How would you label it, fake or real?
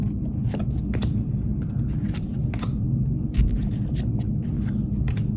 real